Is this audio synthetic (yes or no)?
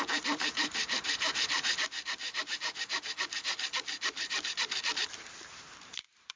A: yes